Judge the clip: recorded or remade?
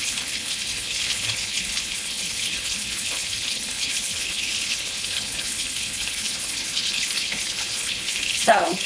remade